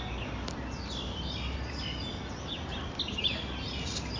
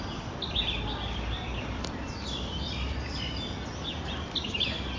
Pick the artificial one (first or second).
second